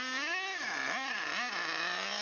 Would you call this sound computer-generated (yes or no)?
no